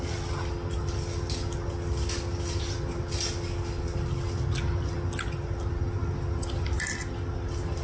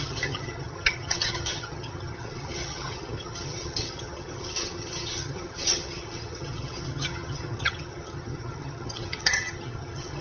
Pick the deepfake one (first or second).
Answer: second